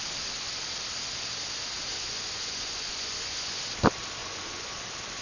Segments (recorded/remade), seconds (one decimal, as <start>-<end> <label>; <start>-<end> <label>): 0.0-1.9 recorded; 1.9-3.6 remade; 3.6-4.2 recorded; 4.2-4.7 remade; 4.7-5.2 recorded